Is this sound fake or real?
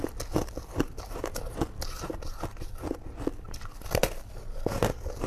real